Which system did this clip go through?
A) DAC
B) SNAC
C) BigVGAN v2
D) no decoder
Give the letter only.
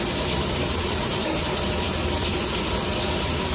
C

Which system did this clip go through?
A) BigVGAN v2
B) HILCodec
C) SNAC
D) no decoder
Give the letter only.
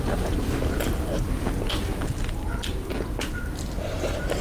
D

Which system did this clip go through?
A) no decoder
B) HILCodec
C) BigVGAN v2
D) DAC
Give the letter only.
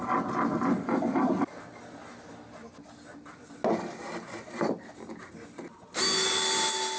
A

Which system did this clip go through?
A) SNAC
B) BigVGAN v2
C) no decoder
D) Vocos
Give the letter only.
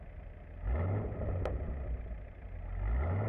C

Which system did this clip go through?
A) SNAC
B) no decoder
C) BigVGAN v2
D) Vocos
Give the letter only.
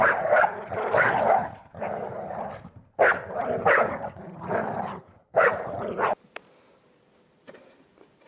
C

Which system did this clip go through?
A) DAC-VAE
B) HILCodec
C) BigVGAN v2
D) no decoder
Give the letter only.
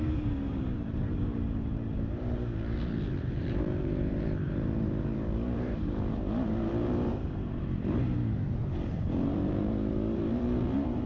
C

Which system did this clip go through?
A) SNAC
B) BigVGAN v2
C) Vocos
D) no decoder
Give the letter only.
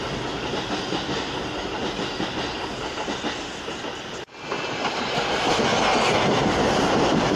D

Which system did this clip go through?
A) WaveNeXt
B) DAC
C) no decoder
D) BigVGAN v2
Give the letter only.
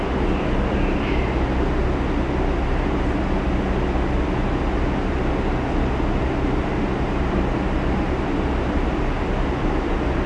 C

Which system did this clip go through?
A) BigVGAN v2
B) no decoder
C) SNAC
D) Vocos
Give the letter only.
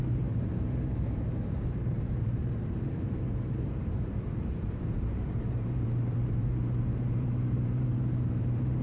A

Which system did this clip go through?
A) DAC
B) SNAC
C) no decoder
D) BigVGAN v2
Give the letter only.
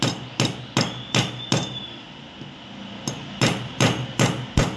C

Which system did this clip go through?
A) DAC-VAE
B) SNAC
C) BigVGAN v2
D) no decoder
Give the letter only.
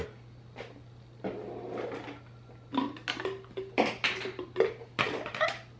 D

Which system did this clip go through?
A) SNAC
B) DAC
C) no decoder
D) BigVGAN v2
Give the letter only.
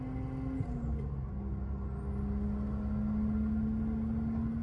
C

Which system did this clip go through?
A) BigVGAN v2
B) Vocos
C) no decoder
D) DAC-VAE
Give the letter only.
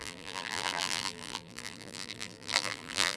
A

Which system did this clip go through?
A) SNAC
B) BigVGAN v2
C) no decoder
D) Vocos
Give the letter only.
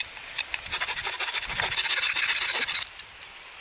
C